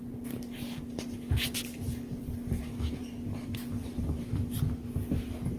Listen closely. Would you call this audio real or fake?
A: real